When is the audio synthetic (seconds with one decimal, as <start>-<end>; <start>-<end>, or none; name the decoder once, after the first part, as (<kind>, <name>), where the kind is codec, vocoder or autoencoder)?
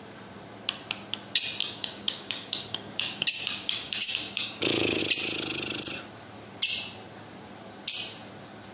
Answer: 1.6-5.0 (codec, DAC)